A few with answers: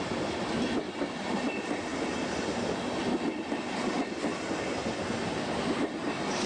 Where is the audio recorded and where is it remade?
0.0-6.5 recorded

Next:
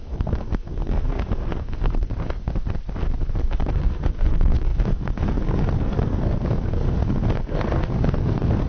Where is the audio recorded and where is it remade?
0.0-2.1 remade; 2.1-3.4 recorded; 3.4-8.7 remade

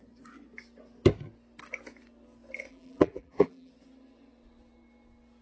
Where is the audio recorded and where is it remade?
0.0-2.7 recorded; 2.7-3.7 remade; 3.7-5.4 recorded

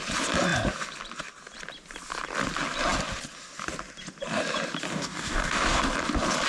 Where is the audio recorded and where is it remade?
0.0-4.9 recorded; 4.9-5.8 remade; 5.8-6.5 recorded

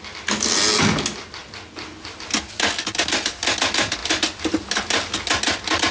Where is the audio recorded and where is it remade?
0.0-5.9 recorded

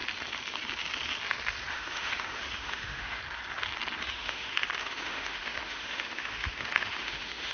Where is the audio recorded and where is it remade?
0.0-1.7 recorded; 1.7-3.2 remade; 3.2-4.0 recorded; 4.0-7.5 remade

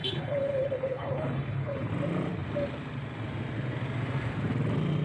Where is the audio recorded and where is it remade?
0.0-1.9 remade; 1.9-5.0 recorded